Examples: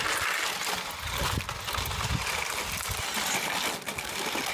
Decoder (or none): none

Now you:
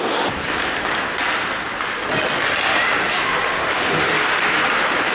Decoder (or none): none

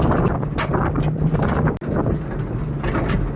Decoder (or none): none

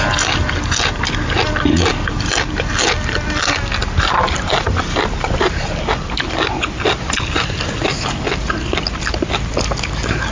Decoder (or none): none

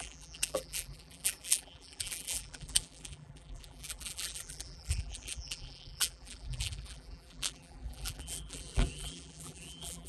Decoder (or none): vocoder, BigVGAN v2